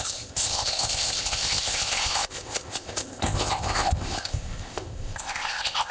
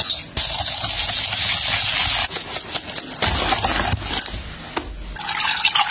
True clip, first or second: second